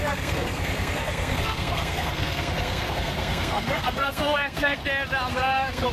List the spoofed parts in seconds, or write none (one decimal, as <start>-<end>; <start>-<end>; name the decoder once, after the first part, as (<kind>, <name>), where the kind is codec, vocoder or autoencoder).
0.0-4.8 (codec, SNAC); 5.3-5.9